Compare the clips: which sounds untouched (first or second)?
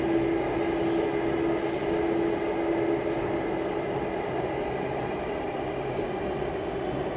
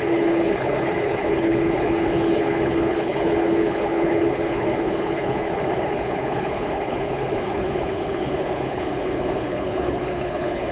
first